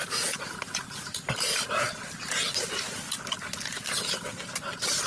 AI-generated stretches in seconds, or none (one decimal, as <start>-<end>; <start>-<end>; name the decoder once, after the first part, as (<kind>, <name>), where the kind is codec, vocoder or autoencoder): none